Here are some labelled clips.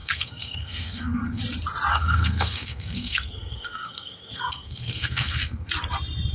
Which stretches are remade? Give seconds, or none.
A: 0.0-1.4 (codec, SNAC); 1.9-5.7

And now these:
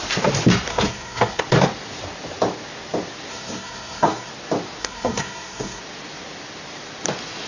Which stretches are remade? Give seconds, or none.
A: 0.7-1.4 (codec, SNAC); 3.3-4.3; 4.8-5.8

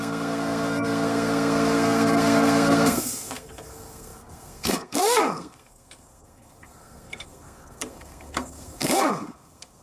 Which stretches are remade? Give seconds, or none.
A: 0.0-9.8 (codec, SNAC)

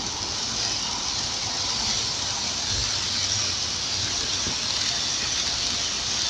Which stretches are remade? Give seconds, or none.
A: none